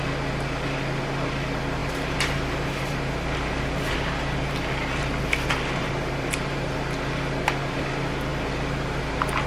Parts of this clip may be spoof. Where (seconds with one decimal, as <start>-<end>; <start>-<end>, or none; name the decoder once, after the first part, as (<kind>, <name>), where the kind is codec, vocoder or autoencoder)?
1.8-6.7 (vocoder, BigVGAN v2)